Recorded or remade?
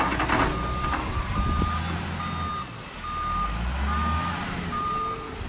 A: recorded